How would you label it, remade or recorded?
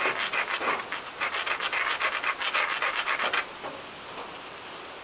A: recorded